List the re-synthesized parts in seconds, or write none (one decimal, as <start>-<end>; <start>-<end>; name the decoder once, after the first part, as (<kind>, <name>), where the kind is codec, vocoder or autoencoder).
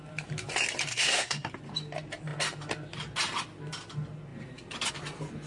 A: 0.9-1.5 (codec, SNAC)